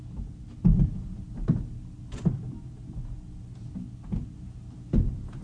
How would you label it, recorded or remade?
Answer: recorded